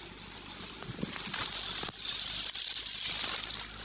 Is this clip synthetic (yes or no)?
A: no